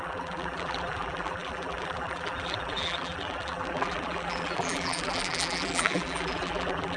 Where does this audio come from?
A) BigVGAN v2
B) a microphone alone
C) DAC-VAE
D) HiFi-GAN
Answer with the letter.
A